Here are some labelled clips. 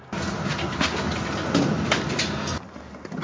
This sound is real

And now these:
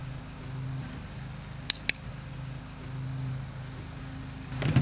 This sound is real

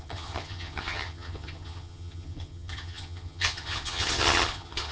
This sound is fake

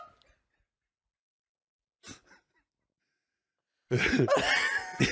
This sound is real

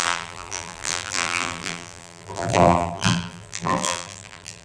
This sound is fake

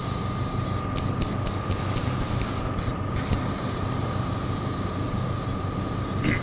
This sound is real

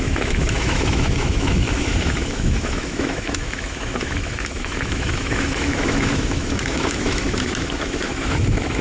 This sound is fake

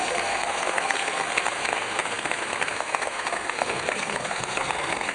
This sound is fake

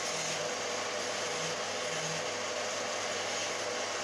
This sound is real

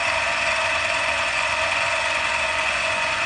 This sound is fake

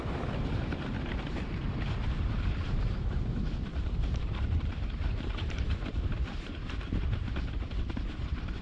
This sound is fake